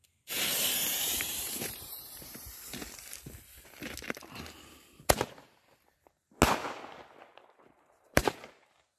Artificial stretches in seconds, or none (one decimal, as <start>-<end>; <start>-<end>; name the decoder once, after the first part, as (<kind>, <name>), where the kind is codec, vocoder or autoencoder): 0.0-2.8 (vocoder, BigVGAN v2); 7.3-9.0